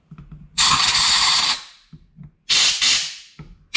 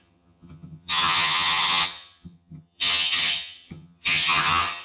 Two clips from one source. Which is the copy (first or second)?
second